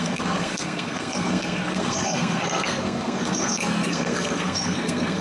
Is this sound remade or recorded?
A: remade